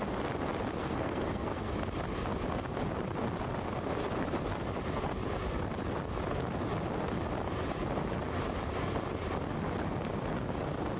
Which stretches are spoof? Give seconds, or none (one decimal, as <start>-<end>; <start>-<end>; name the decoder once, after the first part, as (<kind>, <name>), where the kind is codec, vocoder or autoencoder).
0.8-1.7 (codec, SNAC)